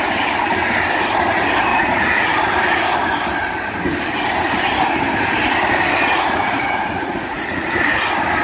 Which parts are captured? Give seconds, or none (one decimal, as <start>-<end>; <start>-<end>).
0.0-1.7; 2.2-6.0; 8.0-8.4